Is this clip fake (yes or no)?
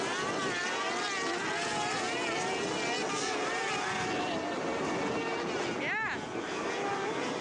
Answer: no